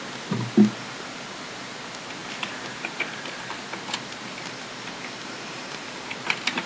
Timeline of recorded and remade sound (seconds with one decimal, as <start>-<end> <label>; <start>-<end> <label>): 0.0-6.7 recorded